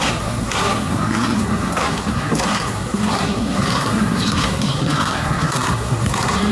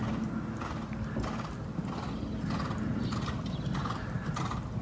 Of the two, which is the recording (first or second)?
second